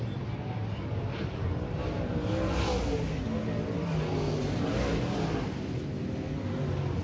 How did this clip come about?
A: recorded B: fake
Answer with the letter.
A